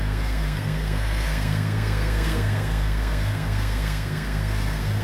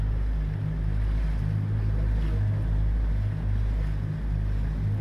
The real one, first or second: second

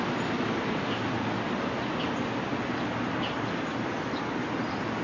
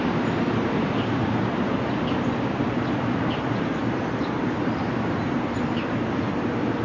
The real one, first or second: first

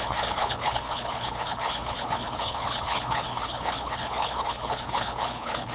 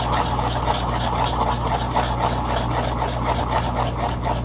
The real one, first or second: second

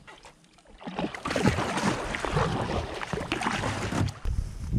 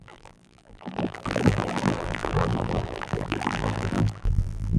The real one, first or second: first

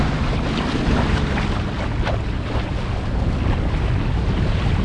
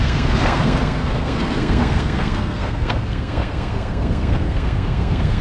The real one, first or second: first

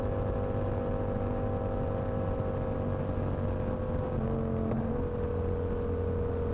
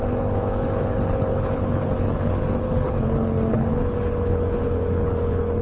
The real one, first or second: first